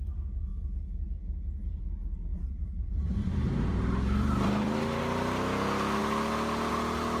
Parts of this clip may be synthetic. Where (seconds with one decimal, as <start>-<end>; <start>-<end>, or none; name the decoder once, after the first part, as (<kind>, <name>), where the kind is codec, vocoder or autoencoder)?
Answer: 1.6-5.0 (vocoder, BigVGAN v2)